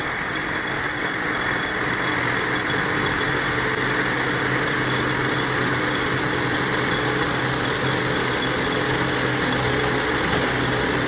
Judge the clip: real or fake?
real